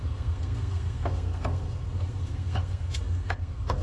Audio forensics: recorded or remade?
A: remade